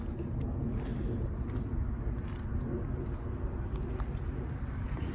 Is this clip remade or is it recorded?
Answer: recorded